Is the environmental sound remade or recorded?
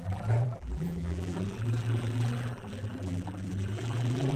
remade